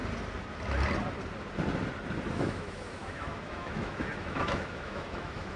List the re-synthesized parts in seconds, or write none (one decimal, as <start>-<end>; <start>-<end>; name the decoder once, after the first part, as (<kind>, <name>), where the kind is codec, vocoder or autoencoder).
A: 2.3-5.6 (autoencoder, DAC-VAE)